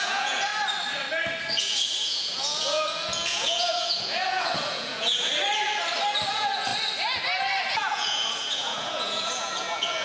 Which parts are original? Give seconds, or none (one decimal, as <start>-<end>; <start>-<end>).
0.5-1.6; 5.3-6.3; 6.7-7.7